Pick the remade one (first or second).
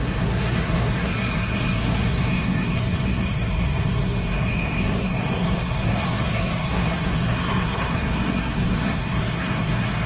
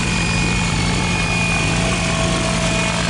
first